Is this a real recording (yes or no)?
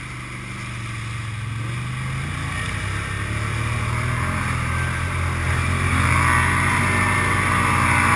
yes